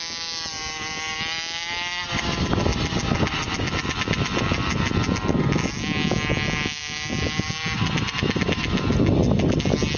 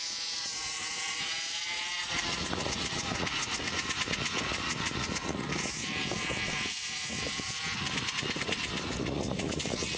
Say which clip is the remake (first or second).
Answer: second